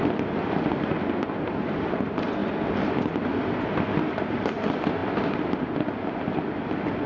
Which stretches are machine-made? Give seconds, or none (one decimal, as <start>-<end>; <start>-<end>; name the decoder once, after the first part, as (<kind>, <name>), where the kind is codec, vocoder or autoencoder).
none